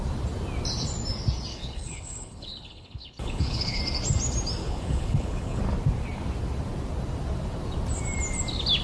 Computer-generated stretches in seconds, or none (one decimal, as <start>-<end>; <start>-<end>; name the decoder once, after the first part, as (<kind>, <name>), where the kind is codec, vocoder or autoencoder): 1.5-3.8 (codec, HILCodec); 4.6-5.6